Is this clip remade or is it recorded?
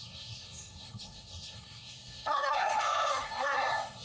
remade